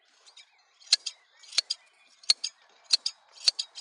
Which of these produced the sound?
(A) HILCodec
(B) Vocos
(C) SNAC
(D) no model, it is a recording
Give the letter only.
D